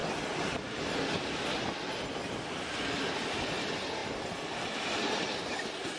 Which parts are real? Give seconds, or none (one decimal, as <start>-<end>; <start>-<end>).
0.0-6.0